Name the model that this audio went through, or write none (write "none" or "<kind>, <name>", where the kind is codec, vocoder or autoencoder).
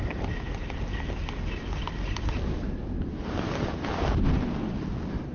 none